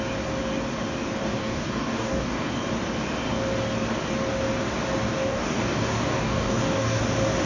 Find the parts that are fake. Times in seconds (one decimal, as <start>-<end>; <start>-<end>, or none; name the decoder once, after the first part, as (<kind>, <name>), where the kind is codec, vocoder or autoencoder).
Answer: 1.2-2.5 (codec, DAC); 5.2-7.0